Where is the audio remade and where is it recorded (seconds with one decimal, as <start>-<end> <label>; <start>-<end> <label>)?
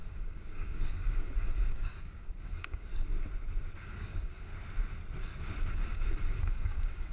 0.0-2.9 remade; 2.9-3.8 recorded; 3.8-4.5 remade; 4.5-5.7 recorded; 5.7-7.1 remade